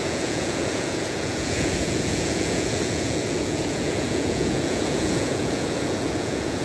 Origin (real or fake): fake